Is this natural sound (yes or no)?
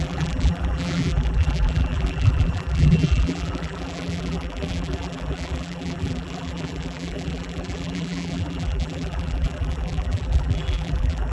no